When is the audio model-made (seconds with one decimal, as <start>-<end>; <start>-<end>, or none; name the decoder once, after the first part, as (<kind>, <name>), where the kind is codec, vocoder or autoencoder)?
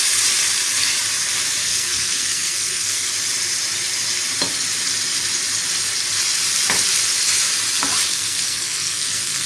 1.6-3.1 (codec, SNAC); 8.1-9.5